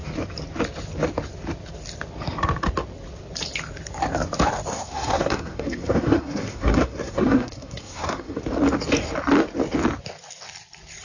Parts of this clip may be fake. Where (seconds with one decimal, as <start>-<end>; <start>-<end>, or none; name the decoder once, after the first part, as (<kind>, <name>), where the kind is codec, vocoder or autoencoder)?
4.7-8.4 (codec, SNAC)

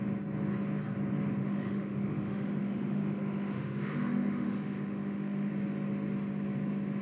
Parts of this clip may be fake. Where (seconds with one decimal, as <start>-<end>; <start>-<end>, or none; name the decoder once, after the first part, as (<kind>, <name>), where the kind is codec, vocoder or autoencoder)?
1.4-5.5 (autoencoder, DAC-VAE)

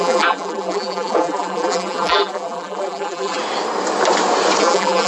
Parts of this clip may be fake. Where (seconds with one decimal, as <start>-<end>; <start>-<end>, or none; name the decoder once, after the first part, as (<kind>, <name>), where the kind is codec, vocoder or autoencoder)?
0.0-3.4 (vocoder, BigVGAN v2); 4.6-5.1